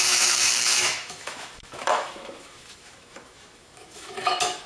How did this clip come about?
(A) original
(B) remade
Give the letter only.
B